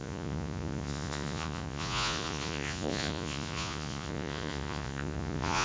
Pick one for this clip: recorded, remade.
remade